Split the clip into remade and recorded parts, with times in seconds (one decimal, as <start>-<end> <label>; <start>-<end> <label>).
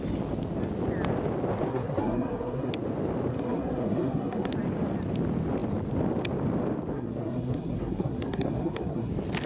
0.0-1.7 recorded; 1.7-2.7 remade; 2.7-3.3 recorded; 3.3-4.5 remade; 4.5-6.9 recorded; 6.9-9.1 remade; 9.1-9.5 recorded